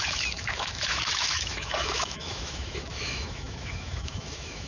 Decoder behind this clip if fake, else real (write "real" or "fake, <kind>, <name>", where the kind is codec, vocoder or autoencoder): fake, autoencoder, DAC-VAE